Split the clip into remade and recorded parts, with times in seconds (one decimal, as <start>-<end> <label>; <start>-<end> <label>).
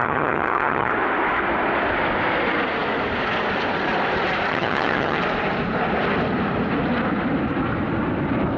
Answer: 0.0-0.9 remade; 0.9-4.5 recorded; 4.5-5.2 remade; 5.2-8.6 recorded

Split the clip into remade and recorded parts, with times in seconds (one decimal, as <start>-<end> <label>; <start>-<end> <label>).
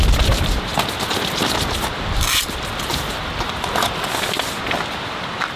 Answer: 0.0-0.7 remade; 0.7-1.4 recorded; 1.4-5.6 remade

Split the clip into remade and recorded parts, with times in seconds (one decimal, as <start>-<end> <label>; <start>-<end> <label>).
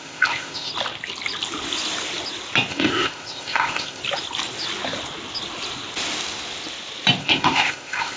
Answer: 0.0-0.7 remade; 0.7-2.7 recorded; 2.7-4.0 remade; 4.0-7.2 recorded; 7.2-8.2 remade